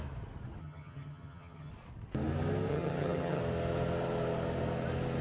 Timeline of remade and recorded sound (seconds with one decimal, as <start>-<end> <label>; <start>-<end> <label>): 0.0-0.6 recorded; 0.6-1.7 remade; 1.7-2.7 recorded; 2.7-3.4 remade; 3.4-5.2 recorded